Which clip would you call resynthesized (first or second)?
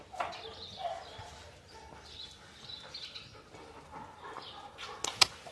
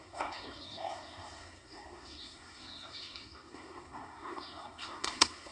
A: second